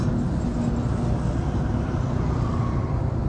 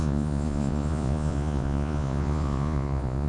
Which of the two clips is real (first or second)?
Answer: first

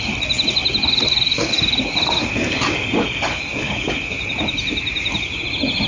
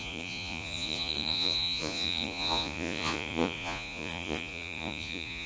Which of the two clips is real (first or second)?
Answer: first